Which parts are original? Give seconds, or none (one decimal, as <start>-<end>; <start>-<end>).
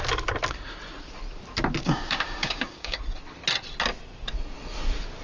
0.0-1.8; 3.0-5.2